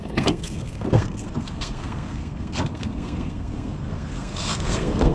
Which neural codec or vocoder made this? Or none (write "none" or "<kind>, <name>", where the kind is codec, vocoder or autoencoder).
codec, SNAC